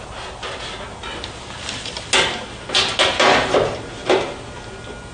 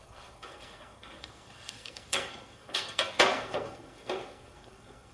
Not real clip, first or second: second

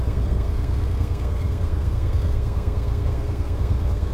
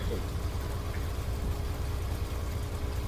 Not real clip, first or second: first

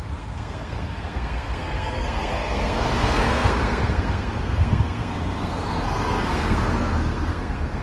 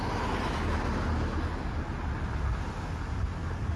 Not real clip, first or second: first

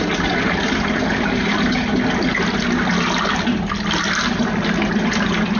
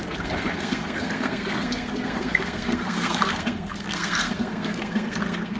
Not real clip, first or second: second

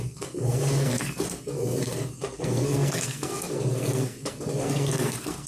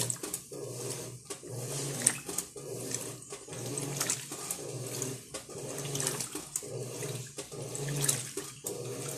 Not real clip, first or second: first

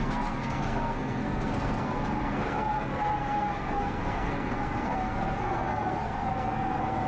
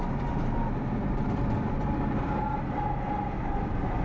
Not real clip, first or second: first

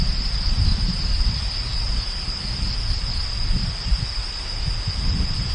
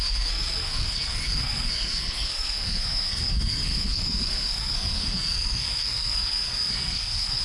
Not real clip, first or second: second